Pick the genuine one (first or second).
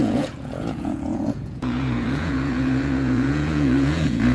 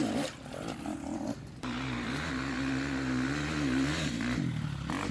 second